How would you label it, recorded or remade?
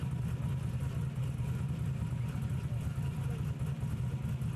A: recorded